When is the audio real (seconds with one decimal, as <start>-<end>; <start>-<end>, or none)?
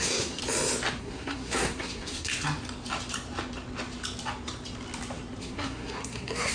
0.4-1.0; 2.3-5.4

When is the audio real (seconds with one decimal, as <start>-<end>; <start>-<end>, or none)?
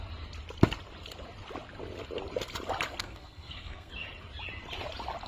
0.0-3.0; 3.9-5.3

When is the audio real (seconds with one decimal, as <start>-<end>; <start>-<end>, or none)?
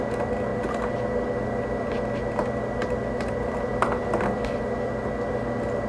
0.0-5.9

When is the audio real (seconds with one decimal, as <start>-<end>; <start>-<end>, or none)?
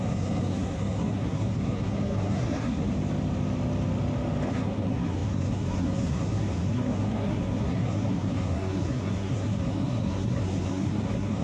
2.9-4.5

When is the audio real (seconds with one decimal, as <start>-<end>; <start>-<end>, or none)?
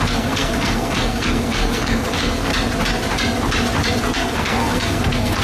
2.5-4.0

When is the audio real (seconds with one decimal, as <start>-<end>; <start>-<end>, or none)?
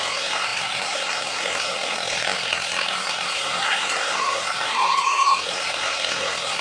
none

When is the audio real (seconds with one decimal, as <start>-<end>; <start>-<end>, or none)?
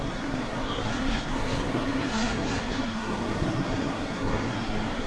none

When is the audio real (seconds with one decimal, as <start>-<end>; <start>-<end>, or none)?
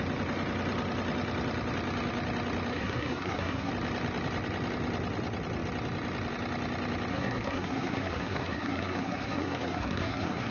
0.0-2.7; 3.7-7.1